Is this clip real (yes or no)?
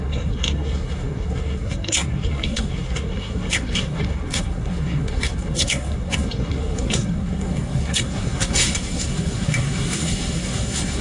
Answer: no